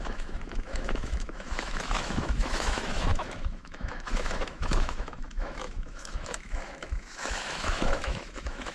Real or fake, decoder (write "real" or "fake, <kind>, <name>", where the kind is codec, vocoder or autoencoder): fake, autoencoder, DAC-VAE